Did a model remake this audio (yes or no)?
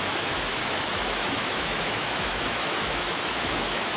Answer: yes